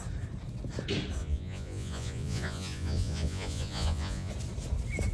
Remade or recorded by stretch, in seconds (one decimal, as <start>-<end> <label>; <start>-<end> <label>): 0.0-1.2 recorded; 1.2-4.3 remade; 4.3-5.1 recorded

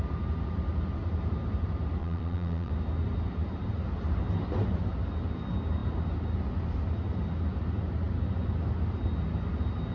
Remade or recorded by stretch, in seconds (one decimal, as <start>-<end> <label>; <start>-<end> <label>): 0.0-2.0 recorded; 2.0-2.7 remade; 2.7-9.9 recorded